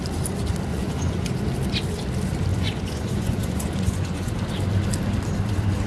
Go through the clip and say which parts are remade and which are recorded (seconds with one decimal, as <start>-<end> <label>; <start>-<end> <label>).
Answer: 0.0-0.7 recorded; 0.7-1.3 remade; 1.3-2.5 recorded; 2.5-4.3 remade; 4.3-5.9 recorded